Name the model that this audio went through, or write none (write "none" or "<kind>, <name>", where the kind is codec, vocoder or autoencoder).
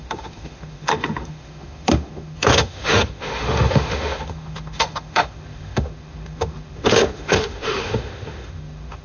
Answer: autoencoder, DAC-VAE